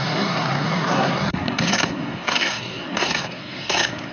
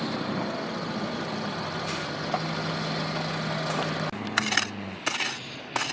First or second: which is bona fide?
second